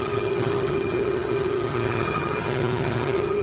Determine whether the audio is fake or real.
fake